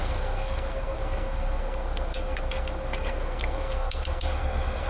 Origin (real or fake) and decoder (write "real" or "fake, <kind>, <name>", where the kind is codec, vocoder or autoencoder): fake, codec, SNAC